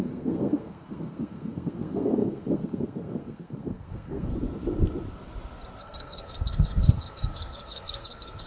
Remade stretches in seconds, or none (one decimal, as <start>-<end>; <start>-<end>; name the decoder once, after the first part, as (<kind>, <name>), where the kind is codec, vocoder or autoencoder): 0.0-4.3 (codec, SNAC); 5.8-8.5